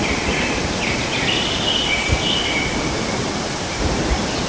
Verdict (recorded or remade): recorded